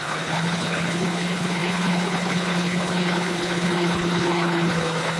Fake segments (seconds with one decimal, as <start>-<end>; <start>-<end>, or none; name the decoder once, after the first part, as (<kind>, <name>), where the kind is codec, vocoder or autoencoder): 0.0-5.2 (codec, HILCodec)